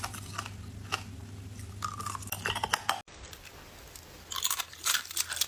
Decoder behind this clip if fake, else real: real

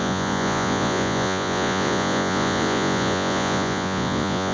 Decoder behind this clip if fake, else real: fake, vocoder, Vocos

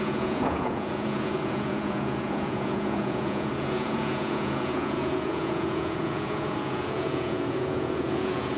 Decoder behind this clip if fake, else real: fake, vocoder, Vocos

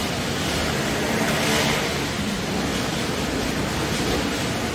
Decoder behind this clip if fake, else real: real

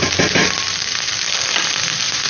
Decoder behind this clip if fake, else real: fake, vocoder, BigVGAN v2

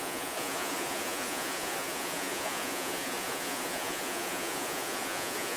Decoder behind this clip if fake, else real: fake, vocoder, Vocos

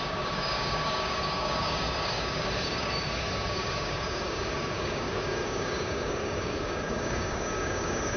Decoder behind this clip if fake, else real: fake, codec, DAC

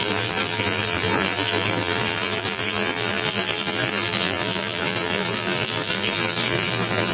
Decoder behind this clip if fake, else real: fake, vocoder, BigVGAN v2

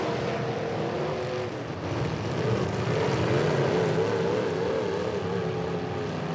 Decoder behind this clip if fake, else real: real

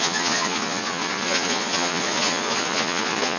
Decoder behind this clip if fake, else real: fake, vocoder, Vocos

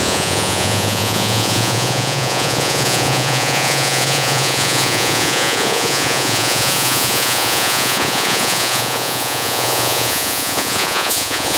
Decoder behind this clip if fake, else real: fake, vocoder, Vocos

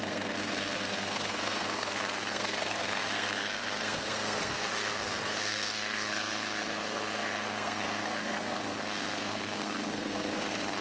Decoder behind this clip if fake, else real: fake, codec, SNAC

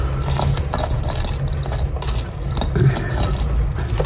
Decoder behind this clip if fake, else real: real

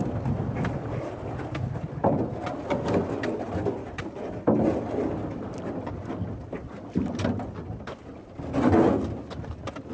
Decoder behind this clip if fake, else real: real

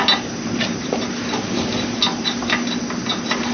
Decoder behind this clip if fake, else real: real